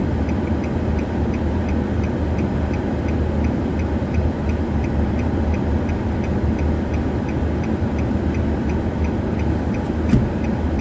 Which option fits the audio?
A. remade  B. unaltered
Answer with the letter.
B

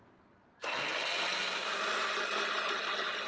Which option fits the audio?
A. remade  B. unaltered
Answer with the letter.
B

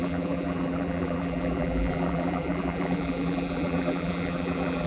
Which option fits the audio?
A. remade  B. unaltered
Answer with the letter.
A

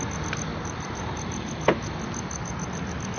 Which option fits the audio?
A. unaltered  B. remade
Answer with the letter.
A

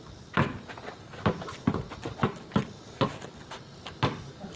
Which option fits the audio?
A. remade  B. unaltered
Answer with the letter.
B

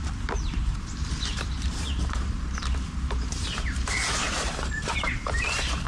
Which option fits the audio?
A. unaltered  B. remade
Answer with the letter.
B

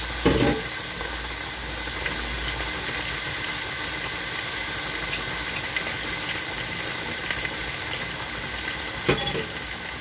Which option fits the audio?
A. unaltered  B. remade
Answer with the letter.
A